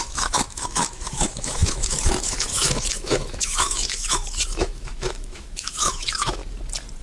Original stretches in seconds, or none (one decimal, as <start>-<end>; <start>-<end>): 6.4-7.0